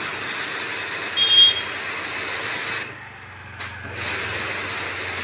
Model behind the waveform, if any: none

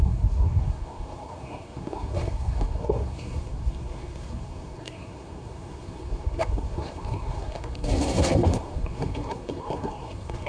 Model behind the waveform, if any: codec, SNAC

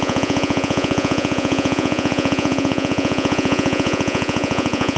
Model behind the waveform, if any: vocoder, Vocos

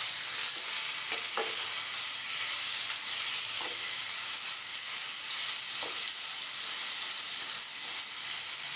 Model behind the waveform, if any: none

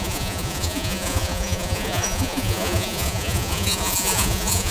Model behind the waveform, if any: vocoder, Vocos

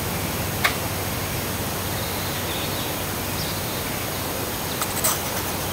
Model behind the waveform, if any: none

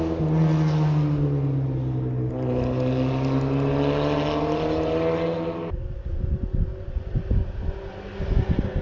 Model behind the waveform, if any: none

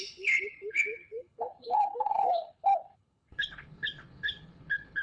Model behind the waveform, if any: codec, HILCodec